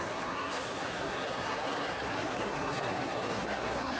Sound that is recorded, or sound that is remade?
remade